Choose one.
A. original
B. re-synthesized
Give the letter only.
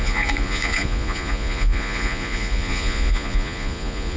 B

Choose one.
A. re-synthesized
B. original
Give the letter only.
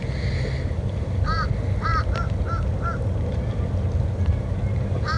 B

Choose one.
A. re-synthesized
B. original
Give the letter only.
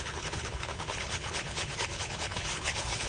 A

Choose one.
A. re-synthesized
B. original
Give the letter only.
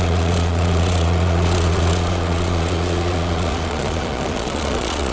A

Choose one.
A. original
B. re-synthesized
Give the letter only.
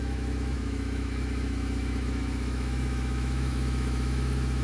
B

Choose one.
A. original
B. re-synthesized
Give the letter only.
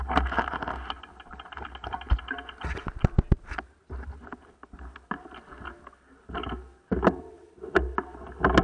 A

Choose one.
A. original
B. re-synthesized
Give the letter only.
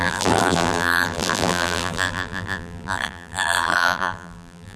B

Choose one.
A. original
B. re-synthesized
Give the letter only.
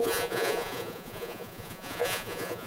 B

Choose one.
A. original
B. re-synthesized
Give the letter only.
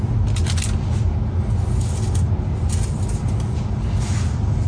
A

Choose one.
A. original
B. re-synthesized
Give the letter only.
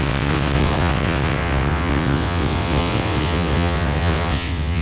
B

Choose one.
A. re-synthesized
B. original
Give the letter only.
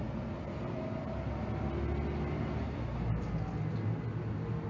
B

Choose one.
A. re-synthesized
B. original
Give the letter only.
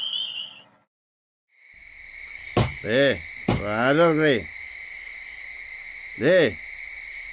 B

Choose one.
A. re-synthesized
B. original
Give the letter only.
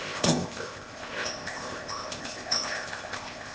A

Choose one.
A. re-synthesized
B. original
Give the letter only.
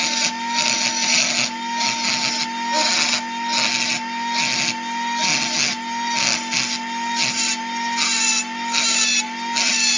B